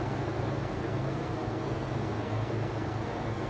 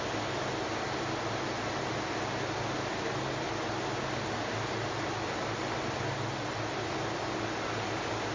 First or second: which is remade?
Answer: first